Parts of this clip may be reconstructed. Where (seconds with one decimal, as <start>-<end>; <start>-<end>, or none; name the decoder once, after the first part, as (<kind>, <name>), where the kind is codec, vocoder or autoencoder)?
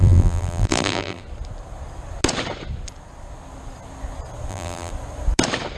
0.0-1.2 (vocoder, BigVGAN v2); 4.5-4.9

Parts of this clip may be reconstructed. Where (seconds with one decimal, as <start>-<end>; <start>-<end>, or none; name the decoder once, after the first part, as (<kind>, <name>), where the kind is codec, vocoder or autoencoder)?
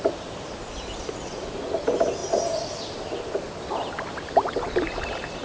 2.2-5.4 (vocoder, BigVGAN v2)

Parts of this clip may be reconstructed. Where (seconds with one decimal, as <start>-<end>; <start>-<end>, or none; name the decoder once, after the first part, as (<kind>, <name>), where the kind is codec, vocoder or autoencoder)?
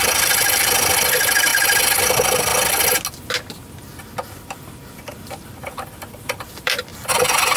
0.0-1.5 (vocoder, BigVGAN v2); 2.0-2.5; 4.0-6.9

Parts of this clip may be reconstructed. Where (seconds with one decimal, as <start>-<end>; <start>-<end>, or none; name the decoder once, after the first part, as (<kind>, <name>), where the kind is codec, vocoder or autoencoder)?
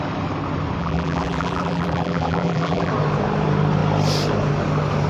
0.8-2.9 (vocoder, BigVGAN v2)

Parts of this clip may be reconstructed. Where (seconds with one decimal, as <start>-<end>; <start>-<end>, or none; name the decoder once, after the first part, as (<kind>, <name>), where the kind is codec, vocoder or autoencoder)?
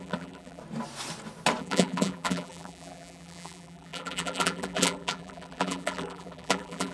0.0-0.6 (vocoder, BigVGAN v2); 1.6-6.9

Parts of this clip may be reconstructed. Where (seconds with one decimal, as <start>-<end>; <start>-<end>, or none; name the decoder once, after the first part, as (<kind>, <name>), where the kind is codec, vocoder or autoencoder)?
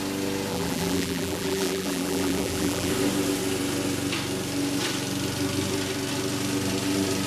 0.5-2.9 (vocoder, BigVGAN v2)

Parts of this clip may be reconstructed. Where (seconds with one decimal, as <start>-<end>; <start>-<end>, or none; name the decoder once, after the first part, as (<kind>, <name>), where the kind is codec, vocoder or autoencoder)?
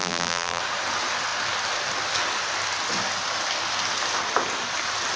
0.0-0.6 (vocoder, BigVGAN v2)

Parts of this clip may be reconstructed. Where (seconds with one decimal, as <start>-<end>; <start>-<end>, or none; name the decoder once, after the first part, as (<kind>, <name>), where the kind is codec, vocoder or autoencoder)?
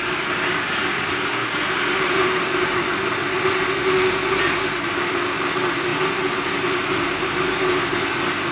1.4-2.8 (vocoder, BigVGAN v2)